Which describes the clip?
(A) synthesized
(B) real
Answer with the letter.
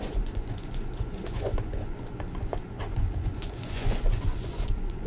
A